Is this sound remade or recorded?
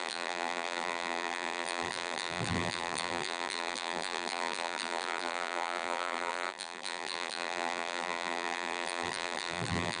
remade